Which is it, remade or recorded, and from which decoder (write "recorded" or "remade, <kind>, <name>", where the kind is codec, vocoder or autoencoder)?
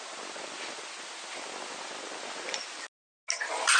recorded